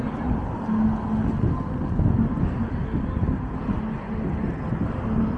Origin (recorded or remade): recorded